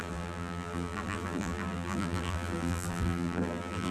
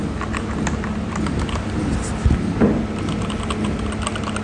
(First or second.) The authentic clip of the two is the second